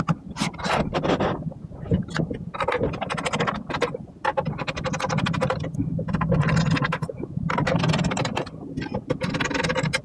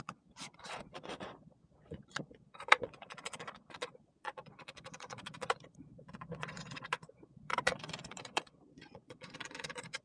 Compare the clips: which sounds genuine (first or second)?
first